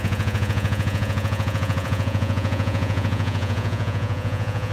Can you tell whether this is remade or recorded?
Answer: remade